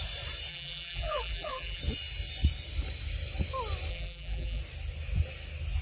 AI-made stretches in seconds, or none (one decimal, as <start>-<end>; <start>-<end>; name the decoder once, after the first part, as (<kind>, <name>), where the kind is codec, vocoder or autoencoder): 0.5-1.8 (vocoder, BigVGAN v2); 3.9-4.6